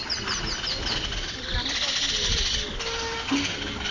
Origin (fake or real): real